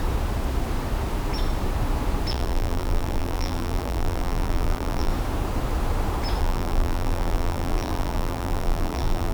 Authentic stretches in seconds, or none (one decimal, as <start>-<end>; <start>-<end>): 0.0-2.3; 5.1-6.4